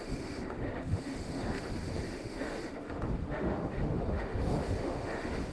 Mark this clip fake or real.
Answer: fake